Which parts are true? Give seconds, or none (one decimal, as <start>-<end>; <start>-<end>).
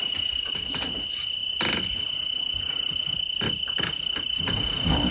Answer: 0.0-5.1